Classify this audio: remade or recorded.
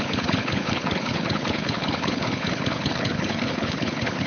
remade